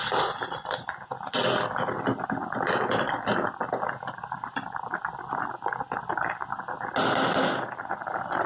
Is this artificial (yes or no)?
no